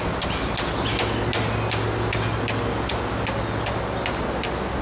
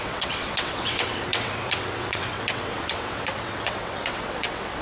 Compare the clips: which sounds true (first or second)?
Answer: first